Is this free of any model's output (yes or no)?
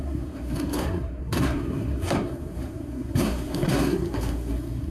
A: no